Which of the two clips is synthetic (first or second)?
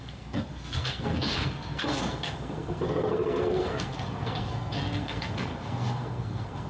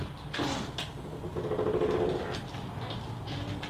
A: first